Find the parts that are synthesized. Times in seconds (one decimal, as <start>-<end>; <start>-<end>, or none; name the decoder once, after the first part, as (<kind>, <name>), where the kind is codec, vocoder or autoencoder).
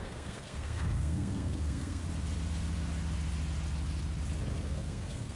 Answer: 0.0-2.0 (codec, SNAC); 4.5-5.4